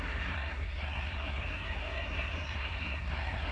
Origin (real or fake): fake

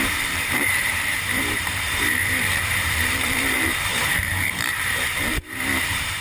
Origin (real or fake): fake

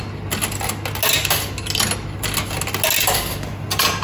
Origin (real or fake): real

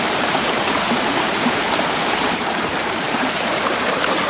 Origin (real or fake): fake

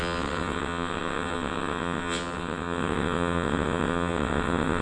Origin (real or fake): fake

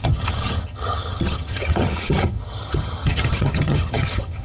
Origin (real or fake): fake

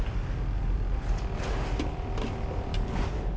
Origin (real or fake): real